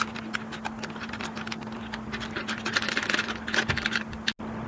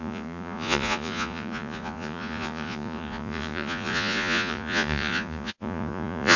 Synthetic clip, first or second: second